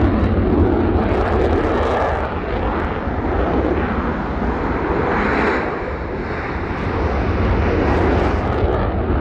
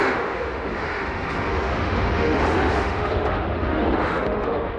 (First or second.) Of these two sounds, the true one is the first